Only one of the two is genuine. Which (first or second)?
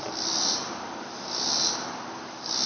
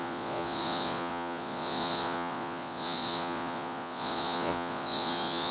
first